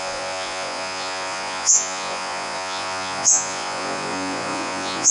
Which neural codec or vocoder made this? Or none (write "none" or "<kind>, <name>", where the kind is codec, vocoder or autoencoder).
vocoder, Vocos